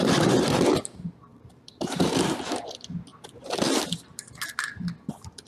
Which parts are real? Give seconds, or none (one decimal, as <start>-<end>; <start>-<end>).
0.0-1.3; 2.1-5.5